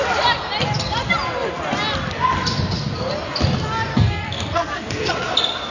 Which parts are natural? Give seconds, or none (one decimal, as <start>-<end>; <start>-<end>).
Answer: 0.0-3.9; 5.1-5.7